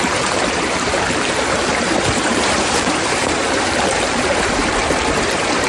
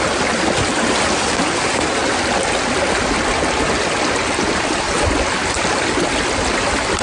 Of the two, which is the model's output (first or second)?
first